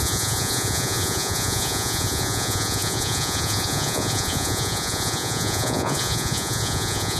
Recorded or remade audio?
remade